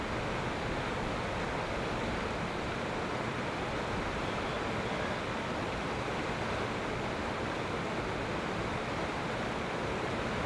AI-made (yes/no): no